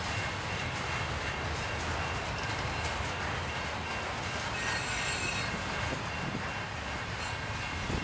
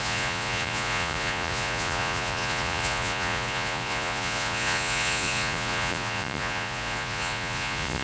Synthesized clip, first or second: second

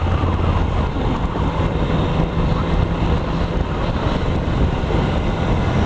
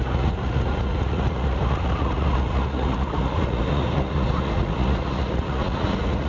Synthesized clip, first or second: second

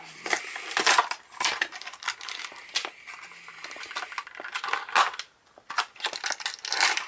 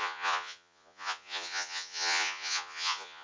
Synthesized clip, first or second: second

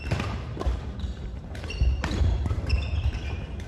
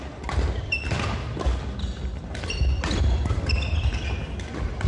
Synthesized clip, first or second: first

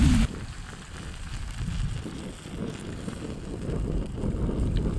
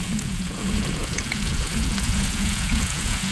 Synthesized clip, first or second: second